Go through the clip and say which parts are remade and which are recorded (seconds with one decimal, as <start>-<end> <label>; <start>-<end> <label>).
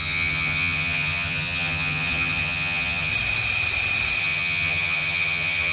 0.0-3.1 remade; 3.1-4.2 recorded; 4.2-5.7 remade